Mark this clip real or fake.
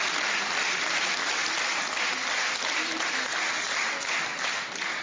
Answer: real